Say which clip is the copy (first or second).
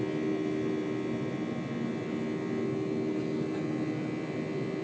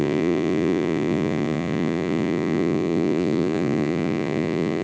second